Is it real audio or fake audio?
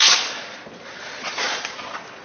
fake